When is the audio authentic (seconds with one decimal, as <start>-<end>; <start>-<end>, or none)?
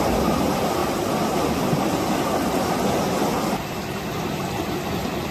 0.0-5.3